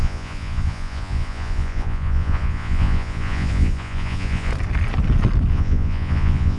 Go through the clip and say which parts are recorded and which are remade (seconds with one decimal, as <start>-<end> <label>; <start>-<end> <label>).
0.0-4.5 remade; 4.5-5.5 recorded; 5.5-6.6 remade